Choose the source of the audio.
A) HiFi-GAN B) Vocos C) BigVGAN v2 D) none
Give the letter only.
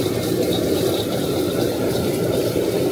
C